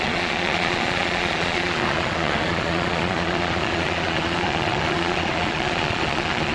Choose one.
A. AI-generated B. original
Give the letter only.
A